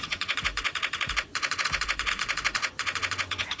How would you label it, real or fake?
fake